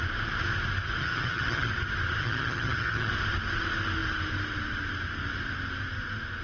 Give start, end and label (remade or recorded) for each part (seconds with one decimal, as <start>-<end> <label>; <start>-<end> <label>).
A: 0.0-1.0 recorded; 1.0-1.7 remade; 1.7-2.2 recorded; 2.2-3.1 remade; 3.1-6.4 recorded